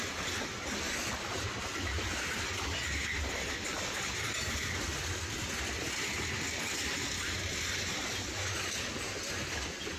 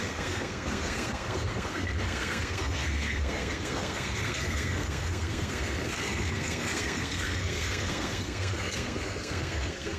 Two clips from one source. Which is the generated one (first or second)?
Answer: second